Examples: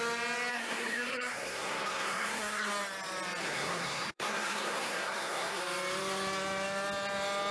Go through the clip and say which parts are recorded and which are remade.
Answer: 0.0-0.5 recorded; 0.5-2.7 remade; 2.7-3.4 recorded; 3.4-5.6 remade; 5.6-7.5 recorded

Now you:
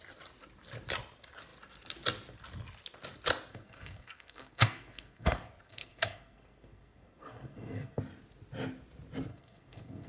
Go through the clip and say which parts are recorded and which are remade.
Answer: 0.0-3.5 recorded; 3.5-8.0 remade; 8.0-9.3 recorded; 9.3-10.1 remade

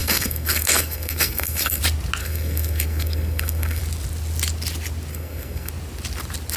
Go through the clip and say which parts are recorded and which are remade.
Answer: 0.0-1.8 remade; 1.8-2.2 recorded; 2.2-3.8 remade; 3.8-5.1 recorded; 5.1-5.7 remade; 5.7-6.6 recorded

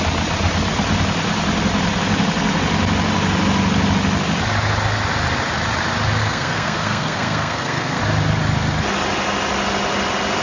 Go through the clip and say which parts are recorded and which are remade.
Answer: 0.0-6.2 recorded; 6.2-8.0 remade; 8.0-10.4 recorded

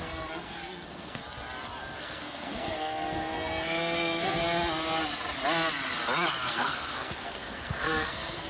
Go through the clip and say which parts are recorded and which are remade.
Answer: 0.0-1.2 remade; 1.2-2.0 recorded; 2.0-4.4 remade; 4.4-6.5 recorded; 6.5-8.5 remade

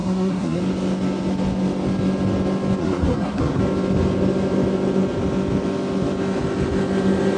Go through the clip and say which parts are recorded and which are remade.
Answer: 0.0-0.6 remade; 0.6-2.8 recorded; 2.8-3.6 remade; 3.6-7.4 recorded

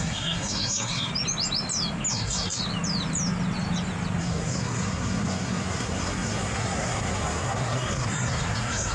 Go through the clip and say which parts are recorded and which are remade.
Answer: 0.0-1.1 remade; 1.1-2.1 recorded; 2.1-2.6 remade; 2.6-4.2 recorded; 4.2-8.9 remade

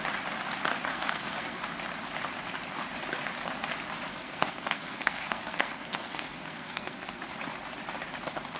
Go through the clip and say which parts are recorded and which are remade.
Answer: 0.0-0.9 recorded; 0.9-1.6 remade; 1.6-4.1 recorded; 4.1-7.2 remade; 7.2-8.6 recorded